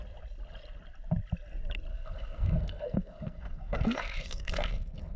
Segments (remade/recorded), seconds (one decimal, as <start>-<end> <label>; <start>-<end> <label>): 0.0-1.9 recorded; 1.9-5.2 remade